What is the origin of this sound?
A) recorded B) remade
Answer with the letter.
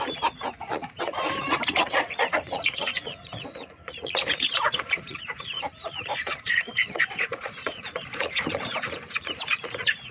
B